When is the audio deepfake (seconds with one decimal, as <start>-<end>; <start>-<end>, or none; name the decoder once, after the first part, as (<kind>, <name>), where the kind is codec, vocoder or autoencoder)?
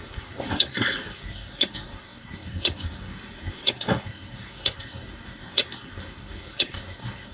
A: 0.0-7.3 (codec, SNAC)